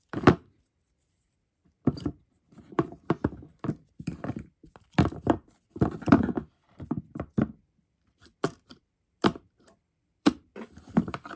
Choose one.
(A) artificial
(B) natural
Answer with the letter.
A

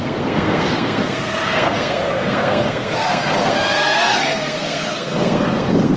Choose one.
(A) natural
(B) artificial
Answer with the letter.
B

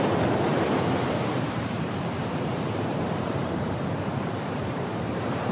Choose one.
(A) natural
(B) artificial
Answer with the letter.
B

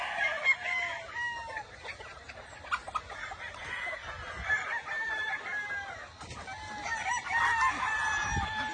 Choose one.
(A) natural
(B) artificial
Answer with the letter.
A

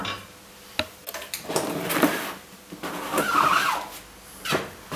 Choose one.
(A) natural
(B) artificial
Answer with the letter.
A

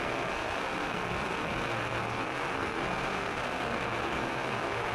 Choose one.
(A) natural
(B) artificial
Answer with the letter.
B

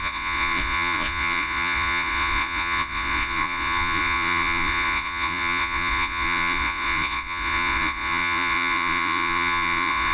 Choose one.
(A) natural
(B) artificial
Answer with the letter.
B